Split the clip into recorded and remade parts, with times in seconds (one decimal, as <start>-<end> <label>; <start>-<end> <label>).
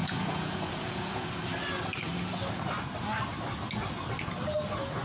0.0-1.2 remade; 1.2-5.0 recorded